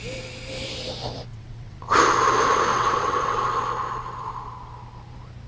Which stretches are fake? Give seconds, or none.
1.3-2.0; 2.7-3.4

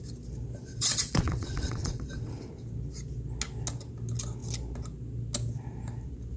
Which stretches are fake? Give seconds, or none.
0.7-2.5

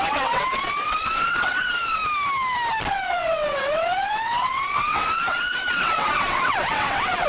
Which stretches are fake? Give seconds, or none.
0.0-2.0; 2.9-7.3